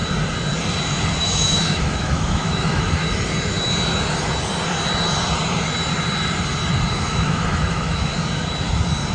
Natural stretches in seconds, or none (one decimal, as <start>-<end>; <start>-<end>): 0.0-1.2; 3.0-6.9; 8.1-9.1